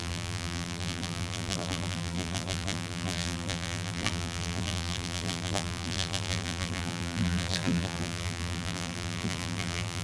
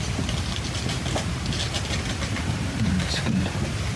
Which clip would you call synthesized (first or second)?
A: first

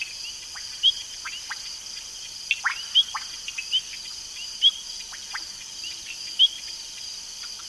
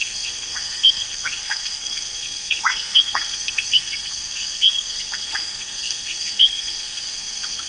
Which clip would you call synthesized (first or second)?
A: second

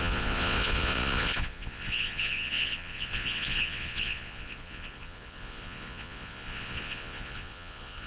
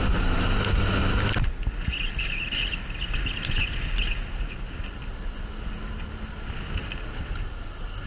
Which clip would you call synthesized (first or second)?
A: first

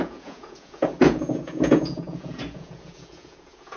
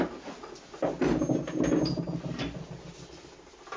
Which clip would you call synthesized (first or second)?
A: first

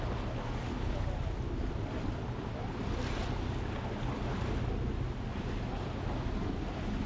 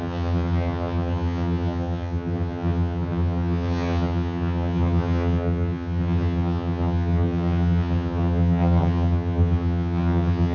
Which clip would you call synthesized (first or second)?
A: second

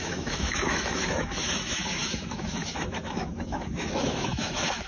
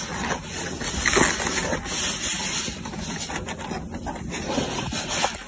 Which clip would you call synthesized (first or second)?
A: first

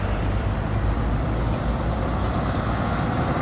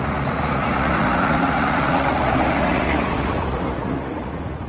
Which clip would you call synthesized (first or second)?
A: second